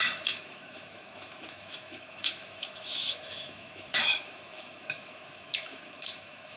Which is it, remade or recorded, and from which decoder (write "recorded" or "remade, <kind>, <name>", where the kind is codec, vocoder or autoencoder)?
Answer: remade, autoencoder, DAC-VAE